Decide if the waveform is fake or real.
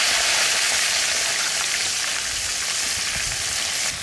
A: real